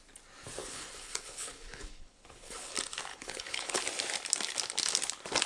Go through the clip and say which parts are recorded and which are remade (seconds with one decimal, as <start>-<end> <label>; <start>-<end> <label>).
0.0-0.6 recorded; 0.6-2.7 remade; 2.7-3.1 recorded; 3.1-3.8 remade; 3.8-5.5 recorded